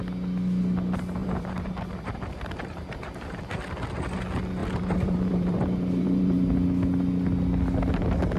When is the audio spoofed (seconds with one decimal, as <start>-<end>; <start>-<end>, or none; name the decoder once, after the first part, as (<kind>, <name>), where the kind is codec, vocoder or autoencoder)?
1.2-3.4 (vocoder, BigVGAN v2); 4.6-6.5